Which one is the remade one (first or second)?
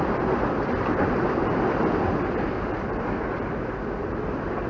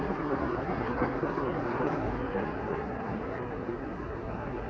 second